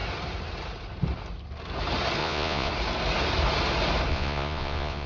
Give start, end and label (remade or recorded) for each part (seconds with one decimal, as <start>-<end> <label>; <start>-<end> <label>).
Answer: 0.0-2.2 recorded; 2.2-2.7 remade; 2.7-4.1 recorded; 4.1-5.1 remade